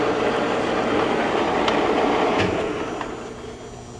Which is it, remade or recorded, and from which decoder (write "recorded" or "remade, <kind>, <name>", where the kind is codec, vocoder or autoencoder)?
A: recorded